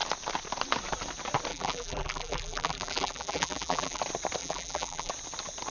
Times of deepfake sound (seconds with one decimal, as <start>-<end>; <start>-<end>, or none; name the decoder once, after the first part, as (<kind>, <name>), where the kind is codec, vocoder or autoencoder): 1.5-4.0 (vocoder, BigVGAN v2); 4.4-5.1